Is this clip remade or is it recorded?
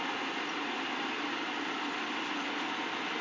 recorded